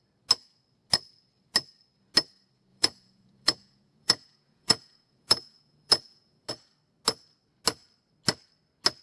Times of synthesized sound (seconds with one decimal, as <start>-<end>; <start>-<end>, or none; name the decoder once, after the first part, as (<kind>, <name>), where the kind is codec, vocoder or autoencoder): 2.7-6.5 (vocoder, Vocos)